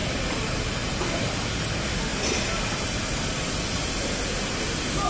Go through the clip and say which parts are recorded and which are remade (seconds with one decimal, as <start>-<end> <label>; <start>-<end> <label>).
0.0-5.1 recorded